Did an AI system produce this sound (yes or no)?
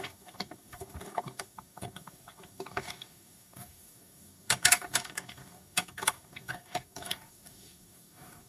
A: yes